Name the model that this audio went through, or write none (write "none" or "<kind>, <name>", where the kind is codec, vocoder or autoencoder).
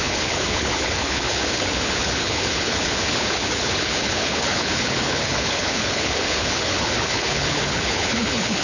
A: codec, HILCodec